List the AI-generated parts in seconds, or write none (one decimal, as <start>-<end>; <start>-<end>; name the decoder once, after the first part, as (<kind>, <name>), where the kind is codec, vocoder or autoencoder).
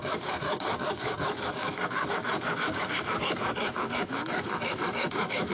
0.0-5.5 (autoencoder, DAC-VAE)